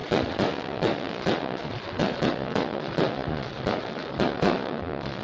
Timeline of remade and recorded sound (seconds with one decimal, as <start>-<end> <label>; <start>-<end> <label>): 0.0-5.2 remade